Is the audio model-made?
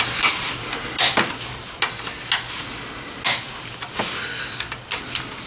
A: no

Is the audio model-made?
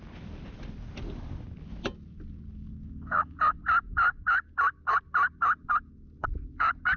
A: no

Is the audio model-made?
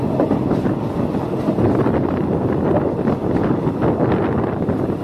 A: no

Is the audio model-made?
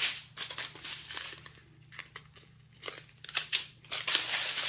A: no